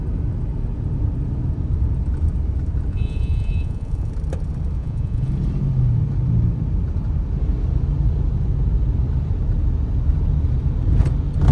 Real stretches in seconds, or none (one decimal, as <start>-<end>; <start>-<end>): 0.0-2.9; 4.1-4.8; 5.3-11.5